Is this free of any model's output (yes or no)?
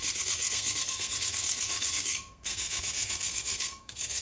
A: no